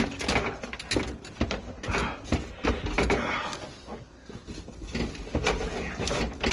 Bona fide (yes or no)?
yes